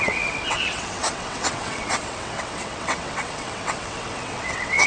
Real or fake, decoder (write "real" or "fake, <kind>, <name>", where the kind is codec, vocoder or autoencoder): fake, vocoder, WaveNeXt